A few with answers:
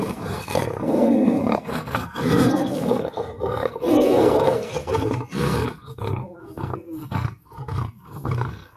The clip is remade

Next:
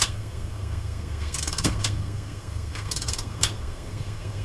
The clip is remade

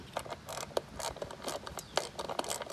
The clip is recorded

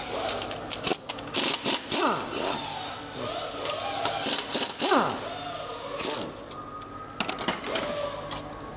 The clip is recorded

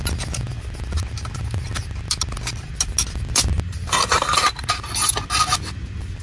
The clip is recorded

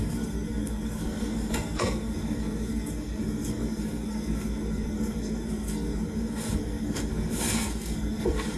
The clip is remade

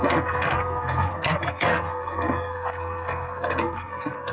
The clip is remade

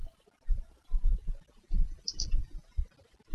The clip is recorded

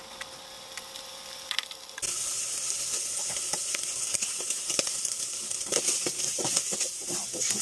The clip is recorded